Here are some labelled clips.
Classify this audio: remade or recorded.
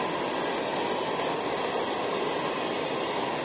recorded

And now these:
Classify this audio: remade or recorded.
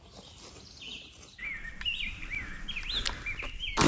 recorded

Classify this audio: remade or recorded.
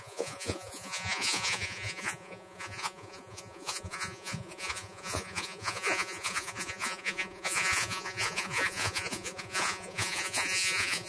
remade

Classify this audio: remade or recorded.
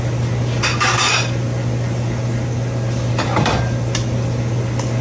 recorded